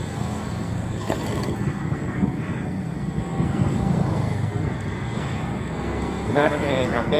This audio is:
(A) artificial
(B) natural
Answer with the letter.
A